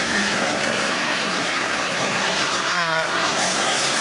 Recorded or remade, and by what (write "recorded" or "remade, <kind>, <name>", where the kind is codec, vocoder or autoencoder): remade, codec, SNAC